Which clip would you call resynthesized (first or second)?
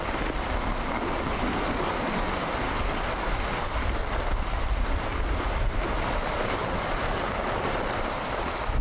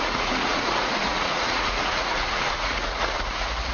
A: second